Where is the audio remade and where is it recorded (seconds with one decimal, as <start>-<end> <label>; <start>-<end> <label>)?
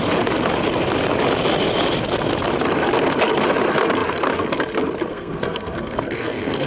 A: 0.0-5.1 recorded; 5.1-6.7 remade